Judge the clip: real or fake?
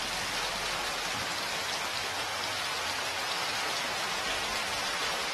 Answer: real